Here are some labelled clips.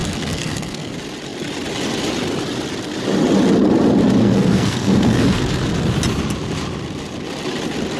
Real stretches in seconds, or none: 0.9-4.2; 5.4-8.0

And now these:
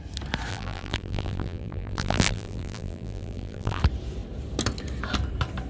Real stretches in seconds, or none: 0.0-0.5; 3.8-5.7

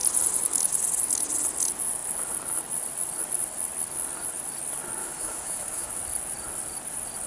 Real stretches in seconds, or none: 0.0-5.0; 5.9-7.3

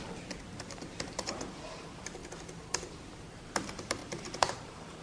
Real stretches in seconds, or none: 2.2-3.3

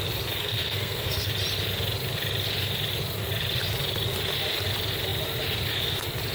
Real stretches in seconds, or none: 0.0-0.4; 1.3-6.3

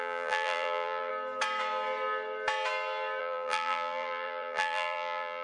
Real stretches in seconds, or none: 1.1-3.2

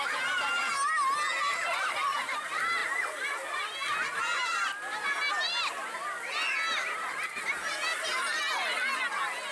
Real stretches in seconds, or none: 0.0-7.9; 8.5-9.5